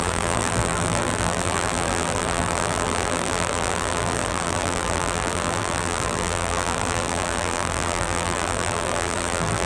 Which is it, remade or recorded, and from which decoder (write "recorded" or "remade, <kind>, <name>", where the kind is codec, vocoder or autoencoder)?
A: remade, vocoder, BigVGAN v2